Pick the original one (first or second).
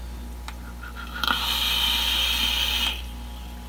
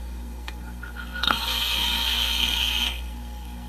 first